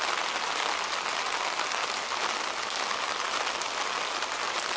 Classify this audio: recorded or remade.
recorded